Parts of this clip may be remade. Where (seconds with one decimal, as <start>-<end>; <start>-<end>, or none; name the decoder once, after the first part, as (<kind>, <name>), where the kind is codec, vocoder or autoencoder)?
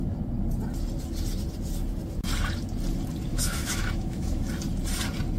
3.3-4.4 (autoencoder, DAC-VAE)